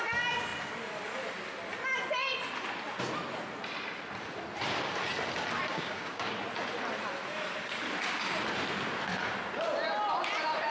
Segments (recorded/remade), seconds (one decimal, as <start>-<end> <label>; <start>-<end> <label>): 0.0-5.7 recorded; 5.7-6.3 remade; 6.3-10.7 recorded

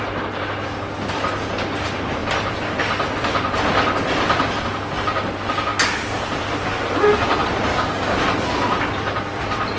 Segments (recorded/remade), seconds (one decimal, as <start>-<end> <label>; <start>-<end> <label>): 0.0-7.7 recorded; 7.7-8.2 remade; 8.2-9.8 recorded

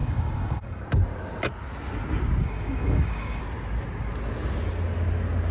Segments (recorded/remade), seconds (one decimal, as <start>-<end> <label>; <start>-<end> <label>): 0.0-0.8 remade; 0.8-2.4 recorded; 2.4-3.4 remade; 3.4-5.5 recorded

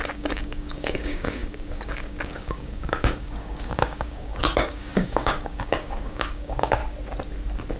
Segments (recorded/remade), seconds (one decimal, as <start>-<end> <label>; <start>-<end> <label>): 0.0-6.8 remade; 6.8-7.8 recorded

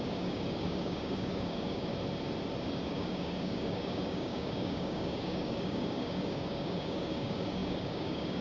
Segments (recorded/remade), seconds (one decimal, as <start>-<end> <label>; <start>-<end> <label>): 0.0-1.9 remade; 1.9-2.7 recorded; 2.7-8.4 remade

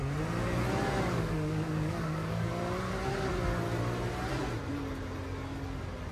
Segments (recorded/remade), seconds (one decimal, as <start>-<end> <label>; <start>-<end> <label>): 0.0-1.1 recorded; 1.1-2.5 remade; 2.5-6.1 recorded

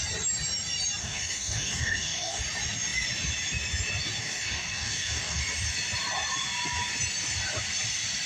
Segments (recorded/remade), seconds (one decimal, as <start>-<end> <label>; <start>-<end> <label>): 0.0-1.0 recorded; 1.0-2.4 remade; 2.4-4.2 recorded; 4.2-5.4 remade; 5.4-8.3 recorded